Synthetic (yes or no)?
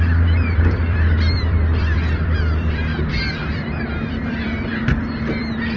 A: yes